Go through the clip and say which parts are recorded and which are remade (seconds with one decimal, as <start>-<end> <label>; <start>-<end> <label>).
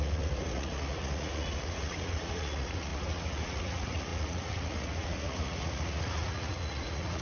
0.0-7.2 remade